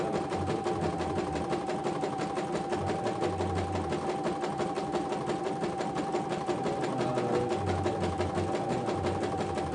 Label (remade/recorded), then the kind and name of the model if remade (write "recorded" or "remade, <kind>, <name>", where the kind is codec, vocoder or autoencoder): recorded